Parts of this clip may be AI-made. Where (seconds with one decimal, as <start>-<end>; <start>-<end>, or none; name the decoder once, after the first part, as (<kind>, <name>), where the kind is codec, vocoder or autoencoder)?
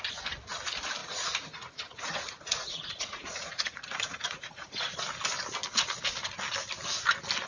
1.0-4.7 (vocoder, Vocos)